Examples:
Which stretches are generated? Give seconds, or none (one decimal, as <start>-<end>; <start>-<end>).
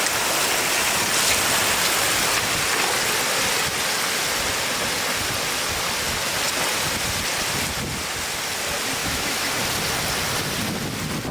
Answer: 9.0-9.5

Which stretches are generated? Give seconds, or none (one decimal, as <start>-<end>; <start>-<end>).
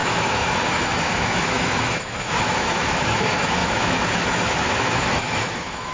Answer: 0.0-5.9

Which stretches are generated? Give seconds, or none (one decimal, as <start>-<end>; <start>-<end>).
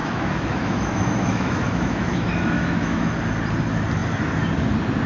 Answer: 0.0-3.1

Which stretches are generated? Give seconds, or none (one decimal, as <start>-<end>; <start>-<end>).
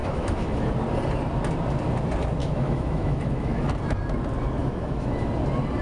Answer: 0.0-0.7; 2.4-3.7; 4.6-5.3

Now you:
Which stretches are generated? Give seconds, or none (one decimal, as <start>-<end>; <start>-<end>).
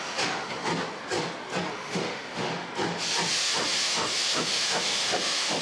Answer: 0.0-0.7; 1.7-2.5; 3.3-5.6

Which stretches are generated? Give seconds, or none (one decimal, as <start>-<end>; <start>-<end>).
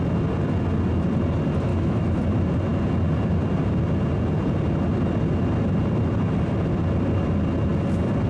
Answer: 1.7-2.2